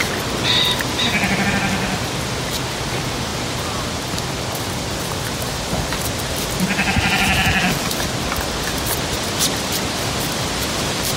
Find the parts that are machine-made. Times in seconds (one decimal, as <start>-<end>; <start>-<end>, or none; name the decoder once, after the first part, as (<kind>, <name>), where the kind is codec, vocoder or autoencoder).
none